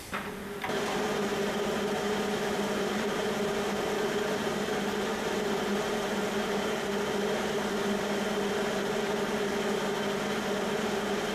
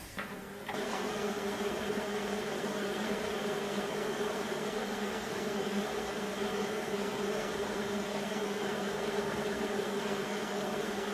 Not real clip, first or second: second